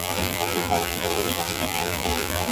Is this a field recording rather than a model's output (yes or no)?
no